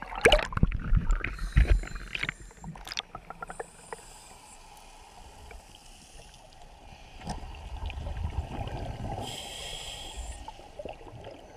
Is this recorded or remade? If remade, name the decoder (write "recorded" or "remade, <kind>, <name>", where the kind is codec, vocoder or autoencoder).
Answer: recorded